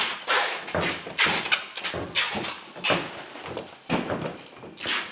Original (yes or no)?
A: yes